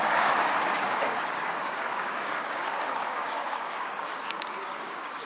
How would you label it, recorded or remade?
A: remade